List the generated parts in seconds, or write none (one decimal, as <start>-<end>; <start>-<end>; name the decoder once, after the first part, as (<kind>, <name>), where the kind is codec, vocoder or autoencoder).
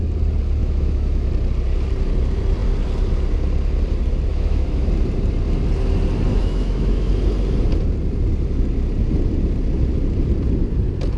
0.6-1.3 (autoencoder, DAC-VAE); 4.3-4.9; 6.3-7.1